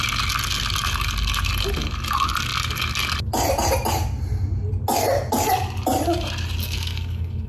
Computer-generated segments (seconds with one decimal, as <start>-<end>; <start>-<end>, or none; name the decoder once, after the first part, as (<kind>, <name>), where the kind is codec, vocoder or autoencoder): 6.6-7.5 (codec, SNAC)